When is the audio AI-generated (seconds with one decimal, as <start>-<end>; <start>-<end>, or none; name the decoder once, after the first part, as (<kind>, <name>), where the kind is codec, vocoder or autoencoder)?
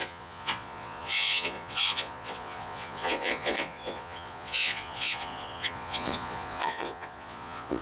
0.0-7.8 (vocoder, Vocos)